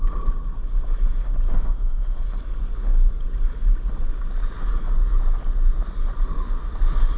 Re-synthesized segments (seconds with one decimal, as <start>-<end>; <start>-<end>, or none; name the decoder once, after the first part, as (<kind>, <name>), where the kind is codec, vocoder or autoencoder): 1.5-2.2 (autoencoder, DAC-VAE)